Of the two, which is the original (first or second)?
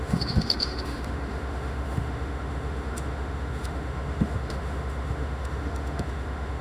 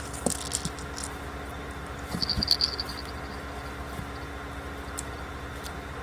second